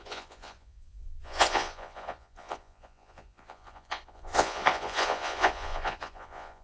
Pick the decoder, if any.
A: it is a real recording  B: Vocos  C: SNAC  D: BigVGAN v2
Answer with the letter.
B